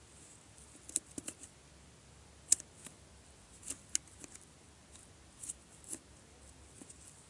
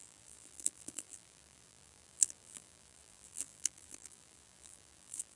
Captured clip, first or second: first